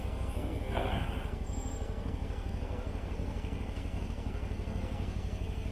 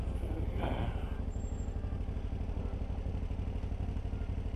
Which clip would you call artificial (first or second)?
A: first